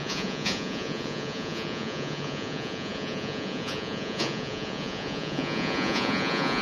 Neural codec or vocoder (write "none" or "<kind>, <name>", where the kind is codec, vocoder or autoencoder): vocoder, Vocos